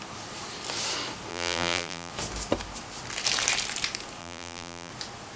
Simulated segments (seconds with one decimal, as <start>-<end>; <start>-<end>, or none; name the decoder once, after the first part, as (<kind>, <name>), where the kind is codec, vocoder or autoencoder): 1.3-2.1 (vocoder, BigVGAN v2); 4.2-4.9